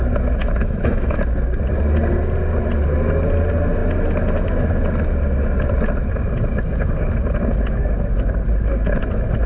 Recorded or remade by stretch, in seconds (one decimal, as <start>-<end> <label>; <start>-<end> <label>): 0.0-0.4 recorded; 0.4-1.2 remade; 1.2-9.5 recorded